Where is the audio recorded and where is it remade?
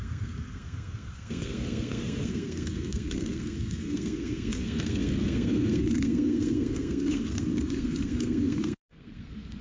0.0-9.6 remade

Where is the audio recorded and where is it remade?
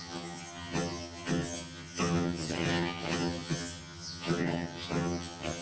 0.0-5.6 remade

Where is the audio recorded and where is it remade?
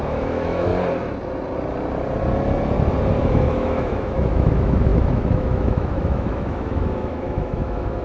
0.0-0.7 remade; 0.7-3.2 recorded; 3.2-8.0 remade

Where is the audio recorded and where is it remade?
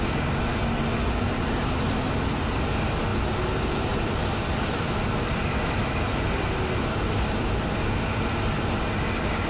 0.0-9.5 recorded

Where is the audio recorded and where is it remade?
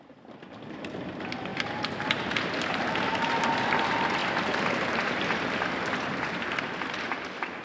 0.0-7.6 recorded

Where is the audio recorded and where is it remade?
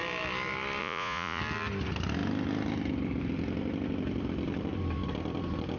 0.0-0.8 recorded; 0.8-1.4 remade; 1.4-5.8 recorded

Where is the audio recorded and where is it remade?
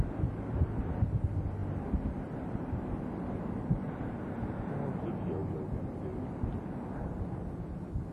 0.0-8.1 recorded